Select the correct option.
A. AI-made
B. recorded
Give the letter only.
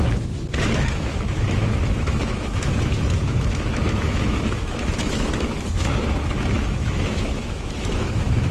A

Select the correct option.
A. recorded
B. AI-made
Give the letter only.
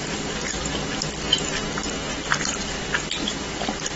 A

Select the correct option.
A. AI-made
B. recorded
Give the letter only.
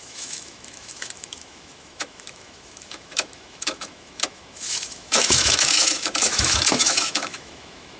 A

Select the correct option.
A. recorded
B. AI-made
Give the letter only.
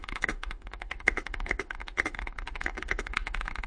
B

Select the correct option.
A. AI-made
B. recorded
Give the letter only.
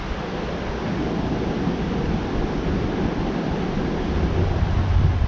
B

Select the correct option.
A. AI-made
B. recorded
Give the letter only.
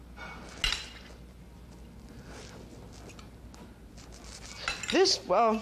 B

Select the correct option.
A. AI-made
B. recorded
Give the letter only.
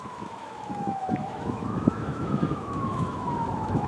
A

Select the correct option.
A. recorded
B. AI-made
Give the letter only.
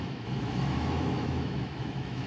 B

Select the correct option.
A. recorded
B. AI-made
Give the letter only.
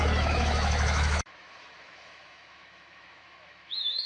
B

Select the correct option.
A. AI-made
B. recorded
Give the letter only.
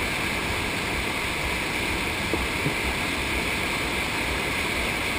B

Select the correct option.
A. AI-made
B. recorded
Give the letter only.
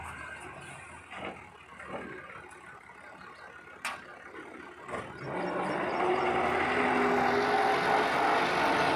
B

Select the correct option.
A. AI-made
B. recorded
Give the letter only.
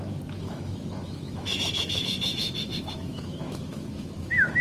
A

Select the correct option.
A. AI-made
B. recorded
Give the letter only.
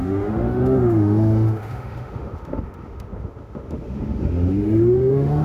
A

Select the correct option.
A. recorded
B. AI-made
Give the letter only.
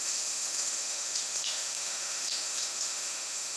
B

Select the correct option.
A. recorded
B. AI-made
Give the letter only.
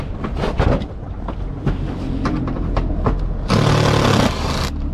A